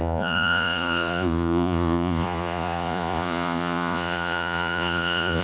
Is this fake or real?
fake